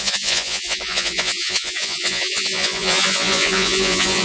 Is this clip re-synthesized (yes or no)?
yes